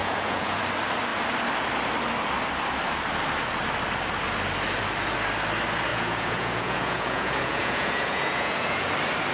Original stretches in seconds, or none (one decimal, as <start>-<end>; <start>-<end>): 0.6-5.9; 8.9-9.3